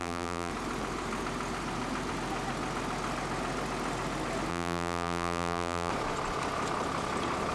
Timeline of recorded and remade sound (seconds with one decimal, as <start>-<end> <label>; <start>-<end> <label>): 0.0-0.5 remade; 0.5-4.5 recorded; 4.5-5.9 remade; 5.9-7.5 recorded